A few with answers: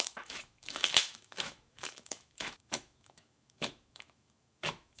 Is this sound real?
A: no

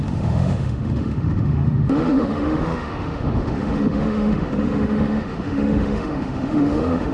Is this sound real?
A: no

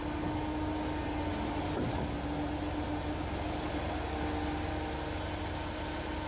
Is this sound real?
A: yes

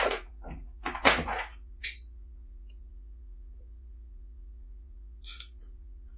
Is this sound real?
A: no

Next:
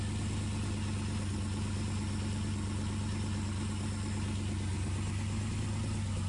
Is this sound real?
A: yes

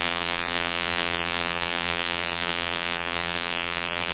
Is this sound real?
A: no